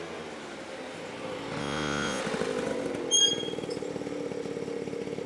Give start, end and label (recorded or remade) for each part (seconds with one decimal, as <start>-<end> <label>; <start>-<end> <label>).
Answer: 0.0-1.6 recorded; 1.6-2.2 remade; 2.2-5.3 recorded